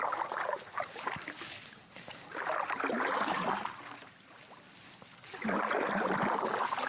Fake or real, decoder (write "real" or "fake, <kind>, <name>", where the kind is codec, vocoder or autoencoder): real